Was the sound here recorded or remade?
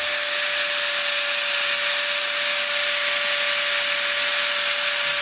recorded